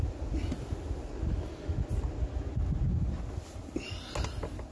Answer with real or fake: real